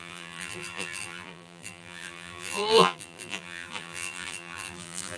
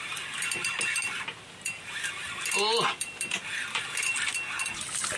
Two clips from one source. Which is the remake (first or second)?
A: first